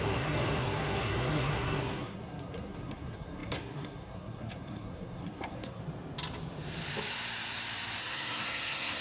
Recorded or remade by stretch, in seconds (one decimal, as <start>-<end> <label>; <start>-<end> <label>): 0.0-5.8 remade; 5.8-8.0 recorded; 8.0-9.0 remade